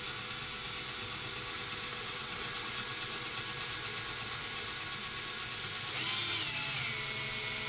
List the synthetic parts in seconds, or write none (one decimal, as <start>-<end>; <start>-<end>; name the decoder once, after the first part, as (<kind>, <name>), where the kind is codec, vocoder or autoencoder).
1.9-2.7 (vocoder, WaveNeXt)